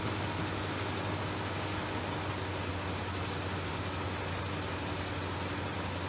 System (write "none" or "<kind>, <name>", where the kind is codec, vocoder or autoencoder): none